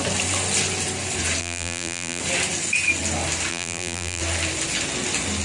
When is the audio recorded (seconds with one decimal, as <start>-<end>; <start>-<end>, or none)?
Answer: 0.0-1.4; 2.2-3.5; 4.2-5.4